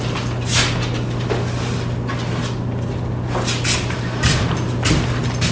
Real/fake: real